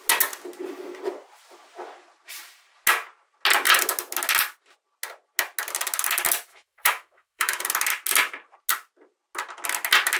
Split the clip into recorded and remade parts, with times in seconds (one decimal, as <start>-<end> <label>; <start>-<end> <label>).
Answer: 0.0-6.5 recorded; 6.5-7.6 remade; 7.6-10.2 recorded